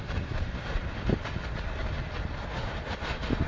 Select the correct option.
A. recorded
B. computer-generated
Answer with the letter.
B